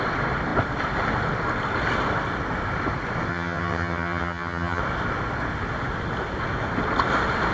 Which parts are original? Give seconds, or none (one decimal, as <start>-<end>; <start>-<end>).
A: 0.0-3.3; 4.8-7.5